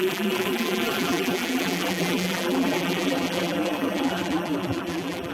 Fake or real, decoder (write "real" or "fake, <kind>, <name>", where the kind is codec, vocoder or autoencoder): fake, vocoder, BigVGAN v2